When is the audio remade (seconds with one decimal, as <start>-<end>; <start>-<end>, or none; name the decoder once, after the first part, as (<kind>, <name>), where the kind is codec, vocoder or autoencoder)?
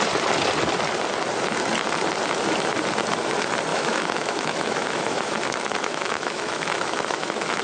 3.7-7.6 (autoencoder, DAC-VAE)